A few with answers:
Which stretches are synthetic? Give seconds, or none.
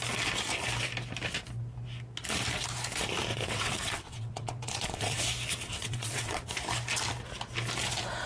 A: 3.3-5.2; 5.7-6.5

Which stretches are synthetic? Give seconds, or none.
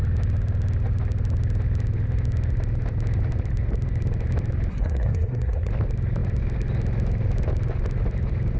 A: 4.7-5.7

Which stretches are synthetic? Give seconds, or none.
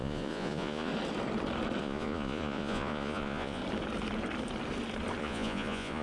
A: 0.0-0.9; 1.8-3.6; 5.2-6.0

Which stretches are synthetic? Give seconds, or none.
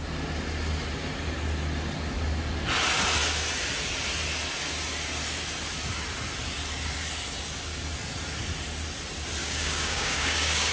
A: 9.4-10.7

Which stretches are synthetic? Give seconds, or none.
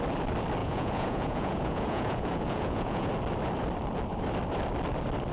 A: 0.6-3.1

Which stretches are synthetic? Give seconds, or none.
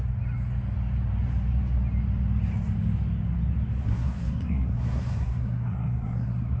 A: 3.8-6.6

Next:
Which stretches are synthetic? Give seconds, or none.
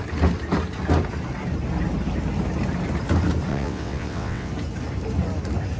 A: 3.5-4.5